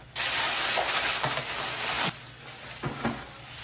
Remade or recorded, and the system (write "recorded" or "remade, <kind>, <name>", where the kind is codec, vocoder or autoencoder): recorded